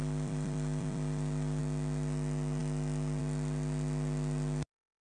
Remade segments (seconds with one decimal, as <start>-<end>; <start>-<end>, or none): 0.0-1.6